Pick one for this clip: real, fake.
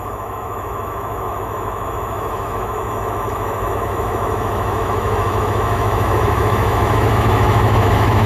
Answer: fake